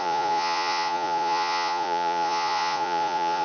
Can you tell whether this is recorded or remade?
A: remade